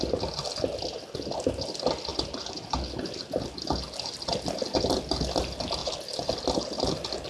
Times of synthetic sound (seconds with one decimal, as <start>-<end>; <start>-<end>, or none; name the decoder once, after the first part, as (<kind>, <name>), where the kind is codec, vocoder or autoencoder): none